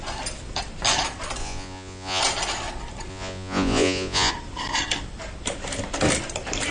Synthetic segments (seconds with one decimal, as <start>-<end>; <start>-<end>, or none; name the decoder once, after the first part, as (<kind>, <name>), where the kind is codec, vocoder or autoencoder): 1.4-2.2 (vocoder, Vocos); 3.1-4.3